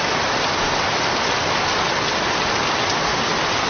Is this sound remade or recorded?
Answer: recorded